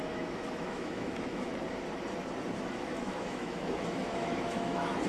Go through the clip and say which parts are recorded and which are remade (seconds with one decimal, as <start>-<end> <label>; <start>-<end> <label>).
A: 0.0-1.5 remade; 1.5-2.6 recorded; 2.6-5.1 remade